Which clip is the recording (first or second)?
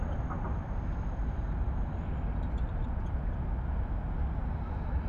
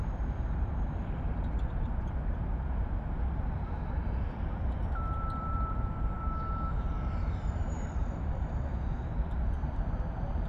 first